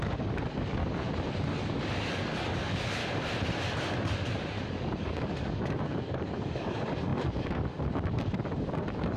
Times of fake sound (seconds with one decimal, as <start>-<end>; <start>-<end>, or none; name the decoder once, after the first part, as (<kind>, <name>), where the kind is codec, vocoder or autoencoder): 0.0-0.8 (codec, DAC); 1.3-3.0; 4.7-9.2